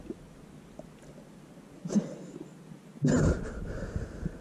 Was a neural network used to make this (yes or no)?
no